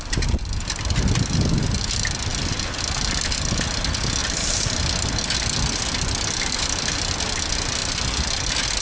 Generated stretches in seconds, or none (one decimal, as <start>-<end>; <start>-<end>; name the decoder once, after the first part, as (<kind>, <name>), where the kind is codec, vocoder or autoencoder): none